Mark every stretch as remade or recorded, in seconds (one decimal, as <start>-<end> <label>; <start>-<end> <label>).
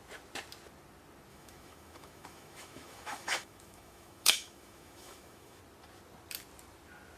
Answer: 0.0-1.3 recorded; 1.3-5.6 remade; 5.6-7.2 recorded